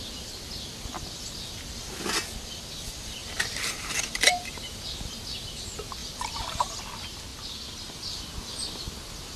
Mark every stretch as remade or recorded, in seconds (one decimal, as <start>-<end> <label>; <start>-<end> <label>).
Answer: 0.0-3.2 recorded; 3.2-5.2 remade; 5.2-6.0 recorded; 6.0-6.8 remade; 6.8-9.4 recorded